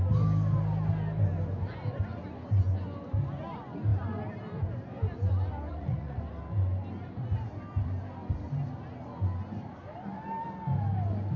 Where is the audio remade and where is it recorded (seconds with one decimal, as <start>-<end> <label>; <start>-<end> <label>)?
0.0-5.7 recorded; 5.7-6.2 remade; 6.2-11.4 recorded